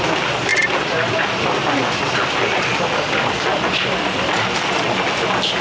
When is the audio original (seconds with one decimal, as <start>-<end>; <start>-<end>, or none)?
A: 0.0-5.6